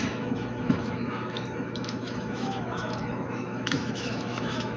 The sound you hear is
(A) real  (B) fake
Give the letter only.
B